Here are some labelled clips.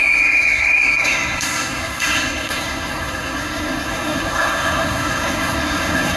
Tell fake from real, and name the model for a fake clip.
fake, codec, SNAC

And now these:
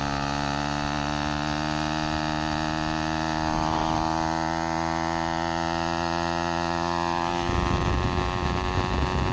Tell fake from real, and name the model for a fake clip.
real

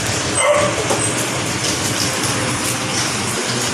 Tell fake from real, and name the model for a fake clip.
real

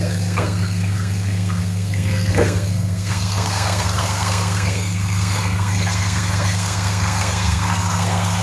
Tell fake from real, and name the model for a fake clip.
fake, codec, SNAC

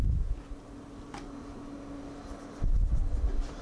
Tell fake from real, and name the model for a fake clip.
real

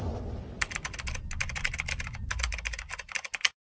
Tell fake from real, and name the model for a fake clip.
real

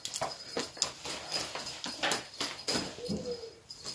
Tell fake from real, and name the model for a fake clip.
real